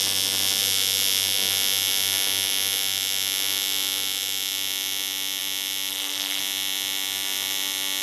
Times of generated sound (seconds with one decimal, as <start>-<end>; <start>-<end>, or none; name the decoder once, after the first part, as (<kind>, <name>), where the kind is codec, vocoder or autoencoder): 5.9-6.4 (codec, SNAC)